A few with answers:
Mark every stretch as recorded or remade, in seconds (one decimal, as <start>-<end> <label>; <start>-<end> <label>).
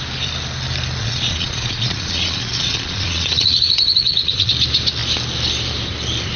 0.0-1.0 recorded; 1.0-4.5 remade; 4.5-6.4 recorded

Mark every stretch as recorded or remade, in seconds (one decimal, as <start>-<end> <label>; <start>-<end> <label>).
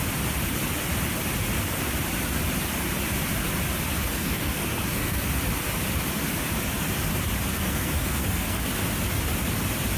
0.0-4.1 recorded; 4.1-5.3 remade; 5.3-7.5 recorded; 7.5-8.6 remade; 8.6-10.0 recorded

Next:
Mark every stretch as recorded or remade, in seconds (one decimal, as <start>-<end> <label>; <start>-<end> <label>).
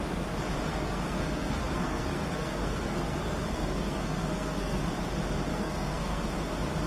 0.0-0.7 recorded; 0.7-4.8 remade; 4.8-5.5 recorded; 5.5-6.3 remade; 6.3-6.9 recorded